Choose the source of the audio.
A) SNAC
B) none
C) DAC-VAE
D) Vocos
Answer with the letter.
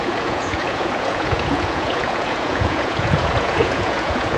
D